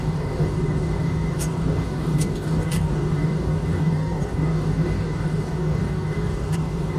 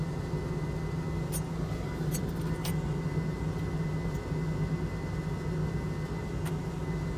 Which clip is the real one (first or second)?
second